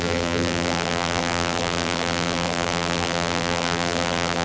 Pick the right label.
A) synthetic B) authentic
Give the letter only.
A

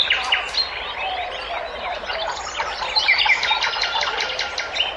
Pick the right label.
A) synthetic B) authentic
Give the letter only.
B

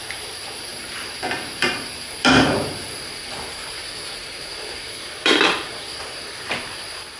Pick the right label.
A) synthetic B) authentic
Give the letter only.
A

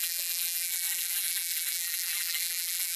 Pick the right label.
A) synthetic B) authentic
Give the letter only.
A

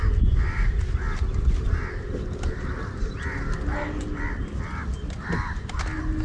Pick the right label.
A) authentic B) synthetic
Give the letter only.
A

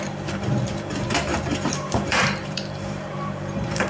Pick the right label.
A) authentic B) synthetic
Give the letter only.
B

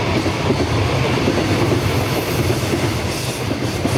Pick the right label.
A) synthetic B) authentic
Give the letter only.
A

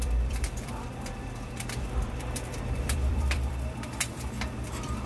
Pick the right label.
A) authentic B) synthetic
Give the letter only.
B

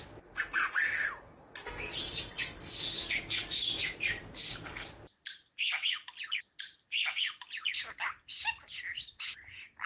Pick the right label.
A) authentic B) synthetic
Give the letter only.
A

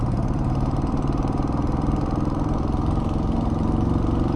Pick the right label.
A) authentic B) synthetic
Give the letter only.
B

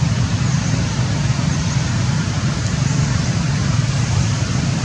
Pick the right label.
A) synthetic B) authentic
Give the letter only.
A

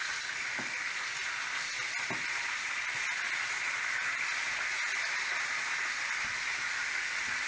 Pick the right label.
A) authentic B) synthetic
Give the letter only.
A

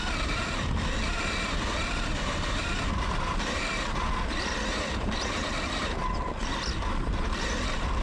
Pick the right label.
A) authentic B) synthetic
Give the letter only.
B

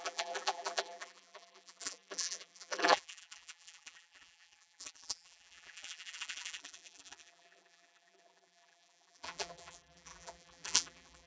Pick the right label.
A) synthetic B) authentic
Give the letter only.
A